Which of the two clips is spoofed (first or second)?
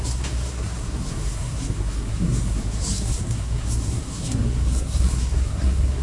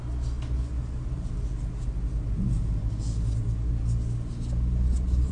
first